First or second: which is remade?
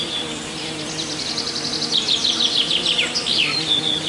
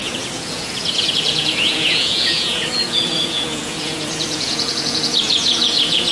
second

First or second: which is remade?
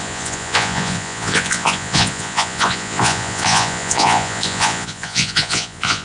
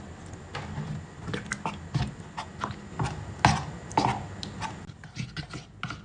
first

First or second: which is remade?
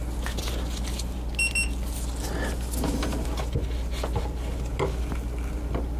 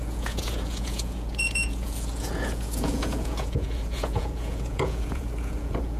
second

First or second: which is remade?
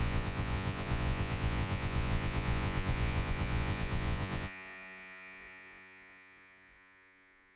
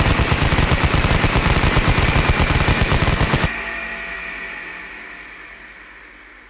first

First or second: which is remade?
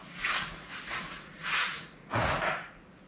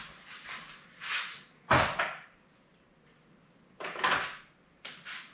first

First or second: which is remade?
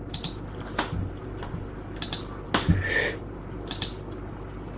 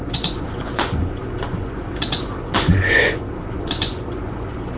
second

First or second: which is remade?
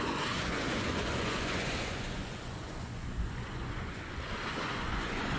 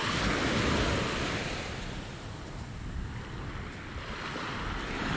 first